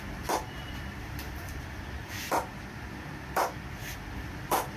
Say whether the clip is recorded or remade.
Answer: remade